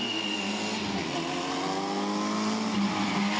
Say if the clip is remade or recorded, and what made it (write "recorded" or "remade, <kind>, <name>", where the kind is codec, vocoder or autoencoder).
recorded